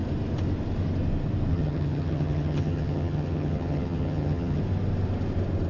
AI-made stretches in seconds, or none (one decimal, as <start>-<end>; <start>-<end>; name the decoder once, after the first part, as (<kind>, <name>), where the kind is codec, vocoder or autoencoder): 1.5-4.6 (vocoder, HiFi-GAN)